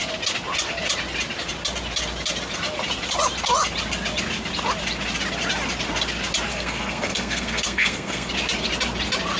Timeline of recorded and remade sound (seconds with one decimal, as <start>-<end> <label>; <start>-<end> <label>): 0.0-6.5 recorded; 6.5-8.3 remade; 8.3-9.4 recorded